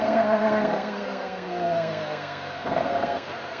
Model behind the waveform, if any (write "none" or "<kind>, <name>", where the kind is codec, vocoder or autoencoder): codec, SNAC